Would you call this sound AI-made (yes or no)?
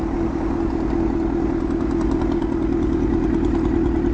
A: no